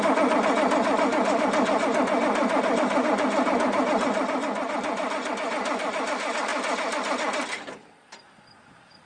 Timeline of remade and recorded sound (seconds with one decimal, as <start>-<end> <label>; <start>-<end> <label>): 0.0-2.4 recorded; 2.4-5.3 remade; 5.3-9.1 recorded